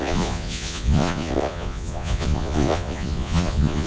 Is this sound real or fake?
fake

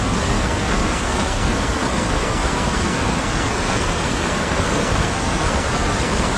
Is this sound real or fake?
fake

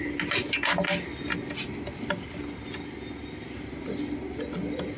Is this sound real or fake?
real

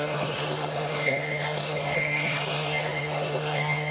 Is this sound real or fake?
fake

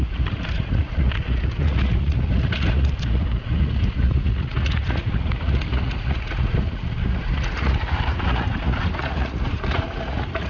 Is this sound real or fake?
fake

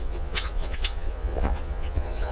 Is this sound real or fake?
fake